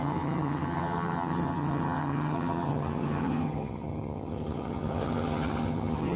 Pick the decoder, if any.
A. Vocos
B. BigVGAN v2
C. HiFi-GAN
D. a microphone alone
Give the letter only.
C